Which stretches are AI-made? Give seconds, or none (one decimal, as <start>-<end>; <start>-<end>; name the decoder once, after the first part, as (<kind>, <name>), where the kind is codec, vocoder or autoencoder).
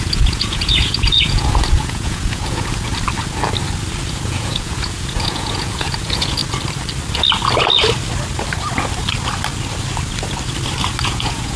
0.0-2.9 (vocoder, Vocos); 4.1-6.4; 11.0-11.6